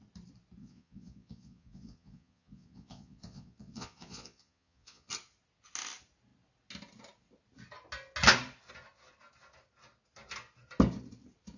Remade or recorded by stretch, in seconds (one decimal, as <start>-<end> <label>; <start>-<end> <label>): 0.0-0.6 recorded; 0.6-5.1 remade; 5.1-11.6 recorded